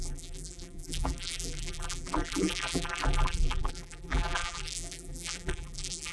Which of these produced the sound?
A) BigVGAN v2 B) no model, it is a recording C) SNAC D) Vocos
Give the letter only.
A